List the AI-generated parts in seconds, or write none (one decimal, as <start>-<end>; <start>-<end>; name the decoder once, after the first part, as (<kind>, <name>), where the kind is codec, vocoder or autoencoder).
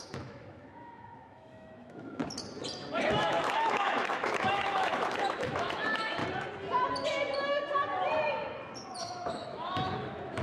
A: 0.0-2.2 (autoencoder, DAC-VAE); 3.0-6.2; 9.0-10.4